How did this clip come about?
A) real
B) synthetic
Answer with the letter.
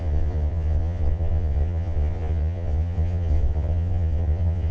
B